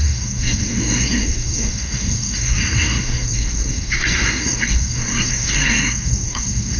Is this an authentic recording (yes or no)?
no